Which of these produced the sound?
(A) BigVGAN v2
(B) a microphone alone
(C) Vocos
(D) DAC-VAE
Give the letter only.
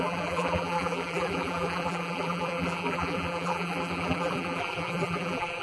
A